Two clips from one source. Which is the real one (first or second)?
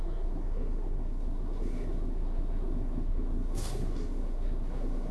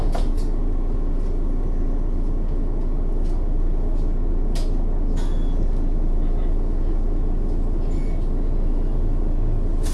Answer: second